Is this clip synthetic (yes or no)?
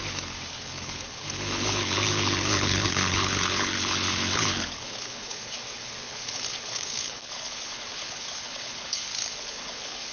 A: yes